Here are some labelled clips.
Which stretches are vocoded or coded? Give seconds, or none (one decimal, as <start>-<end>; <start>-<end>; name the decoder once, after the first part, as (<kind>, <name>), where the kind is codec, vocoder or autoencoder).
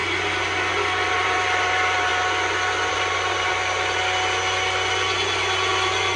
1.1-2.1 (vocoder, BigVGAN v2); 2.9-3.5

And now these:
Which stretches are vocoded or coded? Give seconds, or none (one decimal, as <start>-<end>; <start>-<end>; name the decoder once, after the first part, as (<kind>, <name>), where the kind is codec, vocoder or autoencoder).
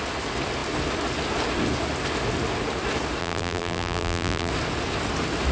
3.2-4.5 (vocoder, BigVGAN v2)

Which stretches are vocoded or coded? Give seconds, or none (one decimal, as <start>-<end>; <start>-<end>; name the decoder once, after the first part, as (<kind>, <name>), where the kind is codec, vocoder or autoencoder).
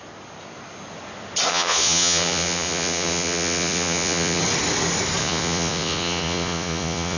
1.5-4.4 (vocoder, Vocos); 5.2-7.2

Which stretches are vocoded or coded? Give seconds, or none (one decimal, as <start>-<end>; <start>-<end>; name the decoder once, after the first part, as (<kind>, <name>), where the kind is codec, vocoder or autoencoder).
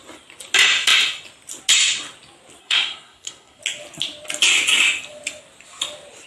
2.6-3.6 (codec, SNAC)